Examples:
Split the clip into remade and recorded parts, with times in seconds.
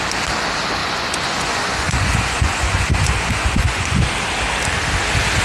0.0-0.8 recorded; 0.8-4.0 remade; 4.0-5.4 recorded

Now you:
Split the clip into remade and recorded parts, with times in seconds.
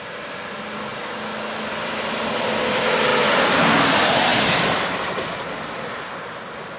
0.0-4.3 recorded; 4.3-5.6 remade; 5.6-6.8 recorded